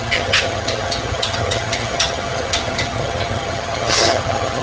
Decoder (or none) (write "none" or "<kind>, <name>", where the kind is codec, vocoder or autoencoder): vocoder, HiFi-GAN